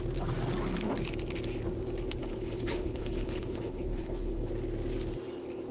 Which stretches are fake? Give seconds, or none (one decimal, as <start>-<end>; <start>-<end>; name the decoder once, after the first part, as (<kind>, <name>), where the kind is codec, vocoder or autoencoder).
2.2-4.5 (codec, HILCodec)